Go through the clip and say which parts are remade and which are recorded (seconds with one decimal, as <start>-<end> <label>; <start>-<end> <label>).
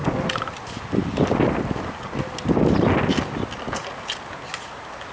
0.0-5.1 recorded